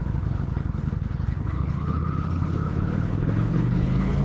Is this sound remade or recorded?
remade